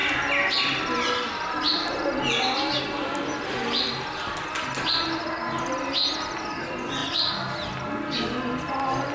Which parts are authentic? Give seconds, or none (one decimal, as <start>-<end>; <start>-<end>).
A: 0.0-9.1